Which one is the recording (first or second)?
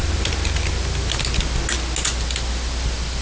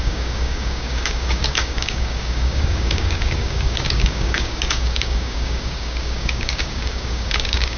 first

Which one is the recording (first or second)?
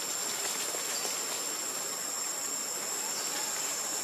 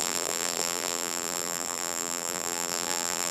first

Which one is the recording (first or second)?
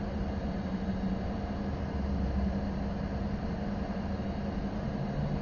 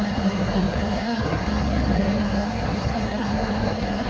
first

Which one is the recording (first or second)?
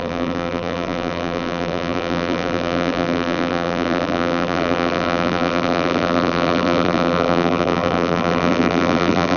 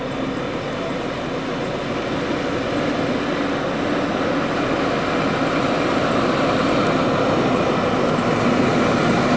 second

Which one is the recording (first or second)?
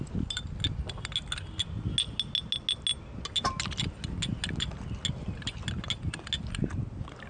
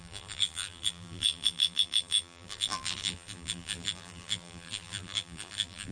first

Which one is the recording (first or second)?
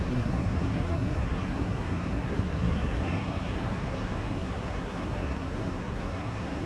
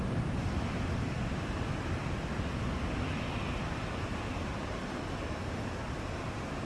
second